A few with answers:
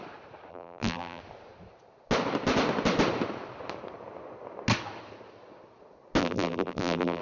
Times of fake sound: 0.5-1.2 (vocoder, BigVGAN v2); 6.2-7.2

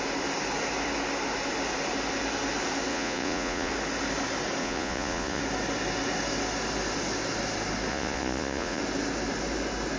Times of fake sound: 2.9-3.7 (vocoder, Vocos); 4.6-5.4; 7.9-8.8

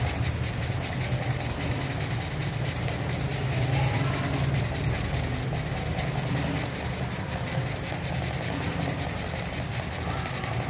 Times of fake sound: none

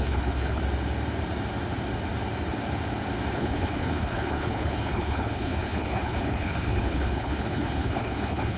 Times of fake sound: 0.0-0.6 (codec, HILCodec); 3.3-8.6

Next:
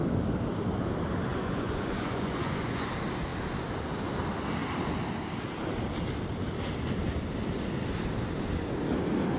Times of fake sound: 1.3-2.9 (vocoder, Vocos)